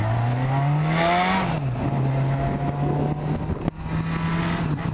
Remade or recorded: recorded